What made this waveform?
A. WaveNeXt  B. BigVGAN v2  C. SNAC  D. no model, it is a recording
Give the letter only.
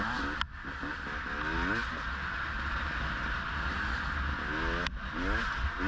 D